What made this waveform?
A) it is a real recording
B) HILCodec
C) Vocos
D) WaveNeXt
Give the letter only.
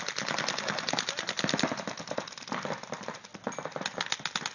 A